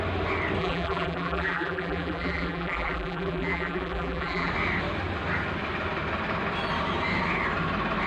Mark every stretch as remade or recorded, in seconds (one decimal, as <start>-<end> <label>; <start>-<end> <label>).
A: 0.0-0.6 recorded; 0.6-4.5 remade; 4.5-8.1 recorded